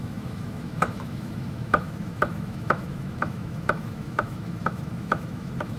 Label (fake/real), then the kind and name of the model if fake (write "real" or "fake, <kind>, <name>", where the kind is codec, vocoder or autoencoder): fake, autoencoder, DAC-VAE